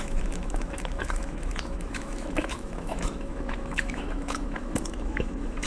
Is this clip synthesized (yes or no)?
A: yes